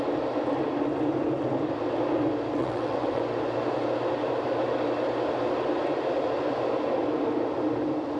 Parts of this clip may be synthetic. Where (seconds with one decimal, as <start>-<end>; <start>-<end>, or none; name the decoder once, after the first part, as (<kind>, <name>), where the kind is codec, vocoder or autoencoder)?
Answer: 2.6-3.2 (vocoder, WaveNeXt)